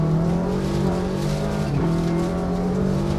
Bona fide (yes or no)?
yes